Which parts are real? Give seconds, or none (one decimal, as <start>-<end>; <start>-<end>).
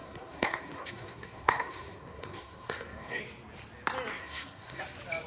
3.2-4.1; 4.8-5.3